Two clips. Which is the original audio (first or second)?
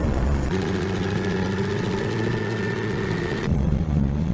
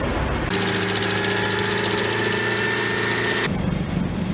second